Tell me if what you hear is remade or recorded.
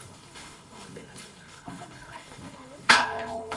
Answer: remade